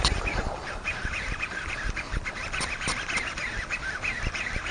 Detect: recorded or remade recorded